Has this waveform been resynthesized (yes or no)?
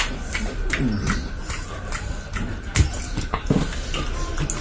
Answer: no